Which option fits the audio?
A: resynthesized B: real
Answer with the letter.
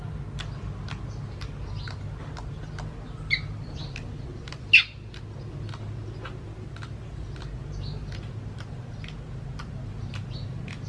B